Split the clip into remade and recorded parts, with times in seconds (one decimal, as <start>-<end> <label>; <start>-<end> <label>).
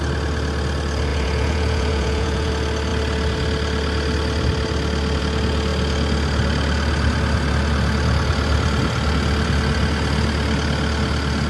0.0-1.1 recorded; 1.1-2.5 remade; 2.5-11.5 recorded